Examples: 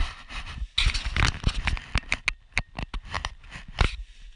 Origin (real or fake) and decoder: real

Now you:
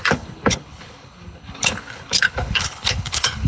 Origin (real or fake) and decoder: fake, codec, HILCodec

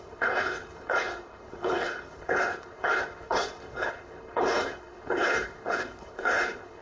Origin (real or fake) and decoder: fake, codec, HILCodec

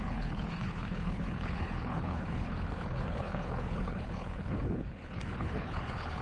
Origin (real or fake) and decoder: fake, codec, HILCodec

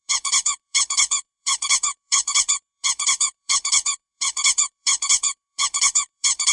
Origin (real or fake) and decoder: fake, codec, HILCodec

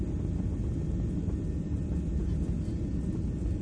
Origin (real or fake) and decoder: real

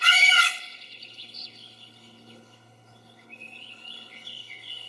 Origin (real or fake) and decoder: fake, codec, HILCodec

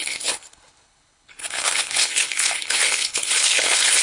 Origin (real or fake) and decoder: fake, codec, HILCodec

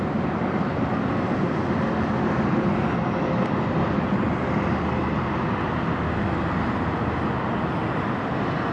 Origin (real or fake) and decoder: real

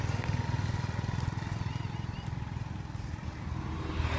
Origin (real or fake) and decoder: real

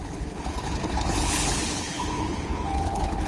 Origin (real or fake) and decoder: fake, codec, HILCodec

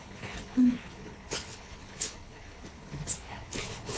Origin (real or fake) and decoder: fake, codec, HILCodec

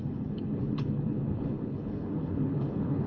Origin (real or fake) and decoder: fake, codec, HILCodec